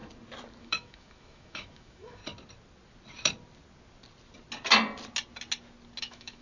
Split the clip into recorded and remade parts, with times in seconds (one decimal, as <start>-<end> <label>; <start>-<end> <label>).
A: 0.0-0.6 recorded; 0.6-2.2 remade; 2.2-6.0 recorded; 6.0-6.4 remade